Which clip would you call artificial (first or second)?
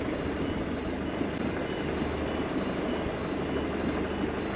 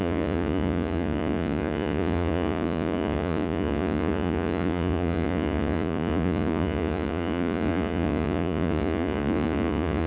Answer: second